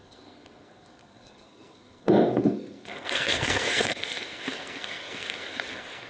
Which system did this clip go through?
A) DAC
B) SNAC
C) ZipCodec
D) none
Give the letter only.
B